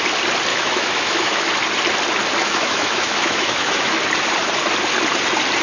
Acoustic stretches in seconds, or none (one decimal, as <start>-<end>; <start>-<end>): 0.0-0.5; 1.5-2.4; 4.0-5.6